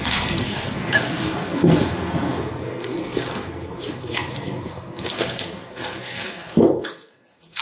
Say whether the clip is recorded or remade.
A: remade